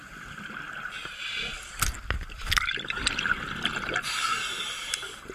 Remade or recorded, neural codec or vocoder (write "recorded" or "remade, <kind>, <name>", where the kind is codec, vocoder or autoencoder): recorded